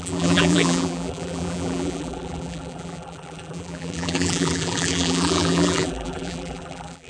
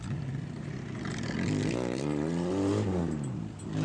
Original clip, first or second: second